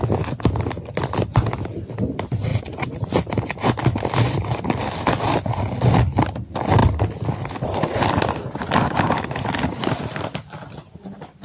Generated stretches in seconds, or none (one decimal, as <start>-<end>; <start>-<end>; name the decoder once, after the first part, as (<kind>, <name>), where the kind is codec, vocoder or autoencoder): 2.5-3.2 (vocoder, Vocos)